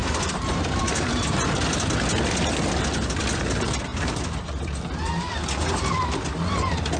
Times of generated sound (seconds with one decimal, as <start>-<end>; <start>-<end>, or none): 0.0-0.8; 3.9-6.0